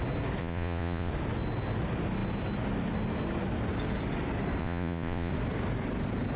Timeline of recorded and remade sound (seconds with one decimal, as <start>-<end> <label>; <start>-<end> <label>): 0.0-0.4 recorded; 0.4-1.1 remade; 1.1-4.6 recorded; 4.6-5.3 remade; 5.3-6.4 recorded